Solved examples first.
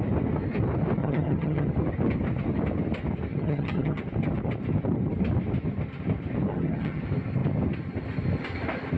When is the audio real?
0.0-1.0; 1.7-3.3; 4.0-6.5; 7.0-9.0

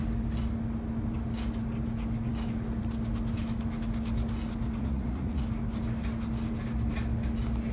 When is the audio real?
0.0-4.8; 5.4-7.7

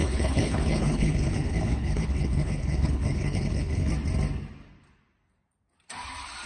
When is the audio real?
3.9-6.5

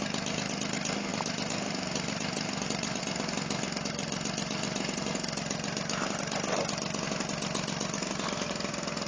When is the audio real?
0.0-1.1; 3.0-9.1

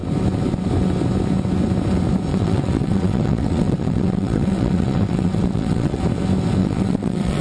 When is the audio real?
0.0-2.3; 6.0-6.6

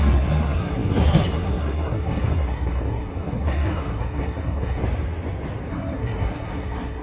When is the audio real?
4.8-5.7

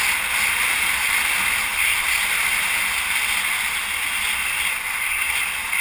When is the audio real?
0.0-5.8